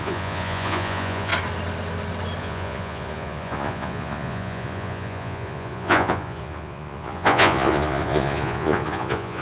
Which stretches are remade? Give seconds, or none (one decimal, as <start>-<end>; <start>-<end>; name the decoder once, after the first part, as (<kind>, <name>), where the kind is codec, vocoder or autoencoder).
0.0-1.3 (vocoder, Vocos); 2.4-9.4

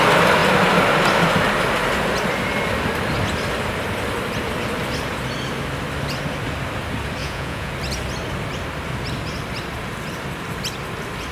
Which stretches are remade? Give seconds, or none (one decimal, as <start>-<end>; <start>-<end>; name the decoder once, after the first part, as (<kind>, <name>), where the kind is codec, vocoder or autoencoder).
7.2-7.7 (vocoder, Vocos)

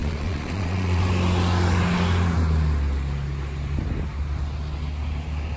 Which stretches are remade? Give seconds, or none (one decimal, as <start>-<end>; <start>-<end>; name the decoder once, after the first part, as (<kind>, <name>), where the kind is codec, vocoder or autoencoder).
0.0-1.0 (vocoder, Vocos)

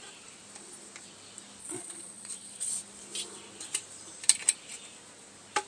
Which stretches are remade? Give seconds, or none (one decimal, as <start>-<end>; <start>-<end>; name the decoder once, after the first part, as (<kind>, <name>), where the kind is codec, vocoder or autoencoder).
1.6-2.7 (vocoder, Vocos)

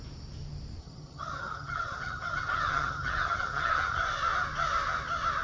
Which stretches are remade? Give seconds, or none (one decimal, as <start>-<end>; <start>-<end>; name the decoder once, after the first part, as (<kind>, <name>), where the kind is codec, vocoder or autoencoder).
0.8-4.0 (vocoder, HiFi-GAN)

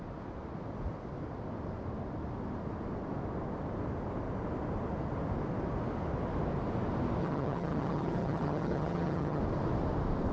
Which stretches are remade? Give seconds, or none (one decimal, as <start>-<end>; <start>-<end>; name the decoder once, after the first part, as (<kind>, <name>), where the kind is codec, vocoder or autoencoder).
7.2-9.4 (vocoder, HiFi-GAN)

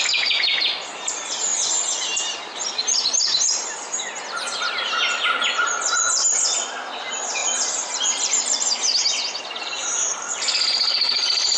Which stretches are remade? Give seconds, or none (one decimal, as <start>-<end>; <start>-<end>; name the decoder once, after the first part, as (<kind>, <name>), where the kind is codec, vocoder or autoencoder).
none

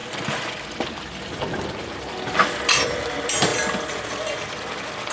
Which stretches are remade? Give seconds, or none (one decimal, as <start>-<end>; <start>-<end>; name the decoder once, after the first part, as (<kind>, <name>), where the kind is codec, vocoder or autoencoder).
none